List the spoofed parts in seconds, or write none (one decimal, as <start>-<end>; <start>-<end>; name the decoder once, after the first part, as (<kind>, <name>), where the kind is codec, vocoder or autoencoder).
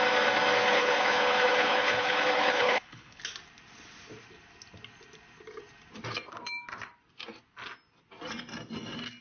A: 0.7-3.2 (codec, HILCodec)